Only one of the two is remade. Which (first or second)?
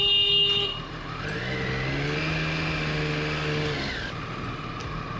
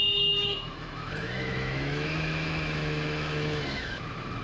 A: second